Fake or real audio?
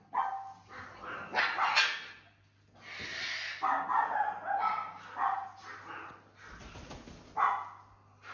real